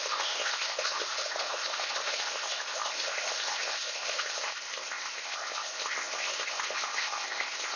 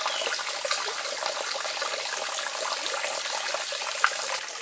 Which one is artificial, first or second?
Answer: first